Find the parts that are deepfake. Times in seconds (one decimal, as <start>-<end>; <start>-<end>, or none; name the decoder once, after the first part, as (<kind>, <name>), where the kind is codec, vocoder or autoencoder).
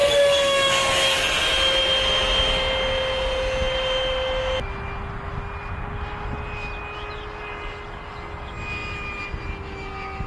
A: 0.0-1.2 (codec, DAC)